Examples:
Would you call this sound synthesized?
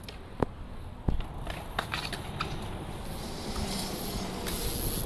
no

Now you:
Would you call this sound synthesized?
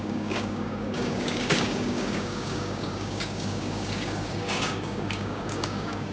yes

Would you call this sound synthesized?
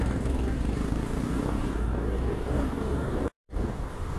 yes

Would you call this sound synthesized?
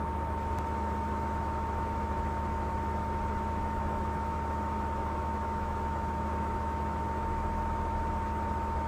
yes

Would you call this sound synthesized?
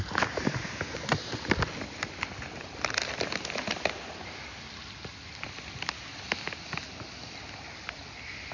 no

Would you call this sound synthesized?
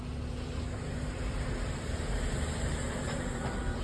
no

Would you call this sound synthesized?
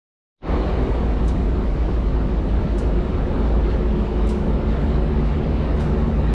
yes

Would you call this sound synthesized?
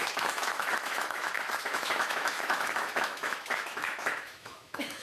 yes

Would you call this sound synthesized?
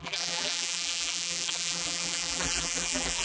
yes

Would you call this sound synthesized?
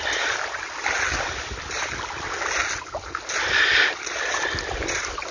no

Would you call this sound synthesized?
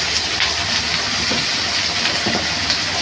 no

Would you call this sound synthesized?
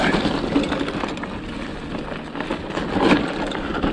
no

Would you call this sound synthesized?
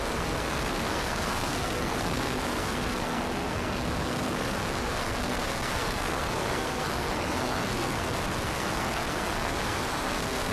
yes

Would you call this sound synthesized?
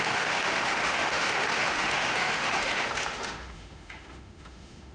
yes